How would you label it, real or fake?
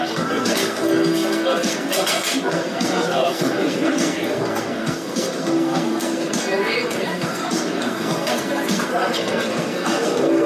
fake